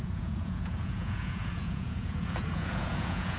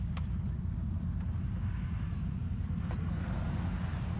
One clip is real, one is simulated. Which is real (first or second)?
second